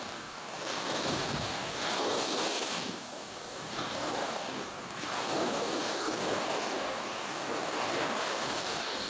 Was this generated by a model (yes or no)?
yes